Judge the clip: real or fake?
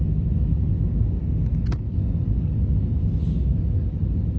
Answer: real